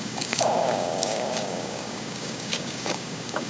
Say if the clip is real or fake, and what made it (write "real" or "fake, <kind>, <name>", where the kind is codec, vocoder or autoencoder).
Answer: fake, codec, DAC